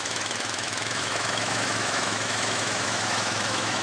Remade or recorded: remade